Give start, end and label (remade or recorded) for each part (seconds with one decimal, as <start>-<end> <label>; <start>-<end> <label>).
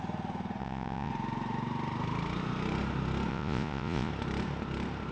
0.0-0.6 recorded; 0.6-1.1 remade; 1.1-3.3 recorded; 3.3-4.1 remade; 4.1-5.1 recorded